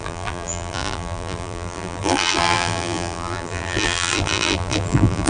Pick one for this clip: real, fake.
fake